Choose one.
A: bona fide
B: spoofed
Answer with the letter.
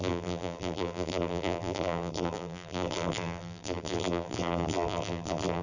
B